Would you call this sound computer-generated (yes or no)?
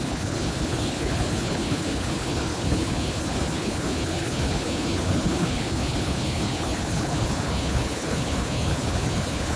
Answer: yes